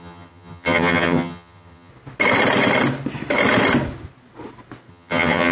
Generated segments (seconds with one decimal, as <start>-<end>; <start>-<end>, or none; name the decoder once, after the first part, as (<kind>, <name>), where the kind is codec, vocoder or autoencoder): 0.0-1.9 (vocoder, HiFi-GAN); 4.9-5.5